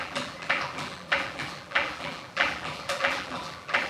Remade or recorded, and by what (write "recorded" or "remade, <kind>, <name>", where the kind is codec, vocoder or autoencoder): remade, vocoder, BigVGAN v2